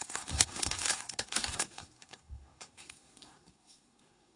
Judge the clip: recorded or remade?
remade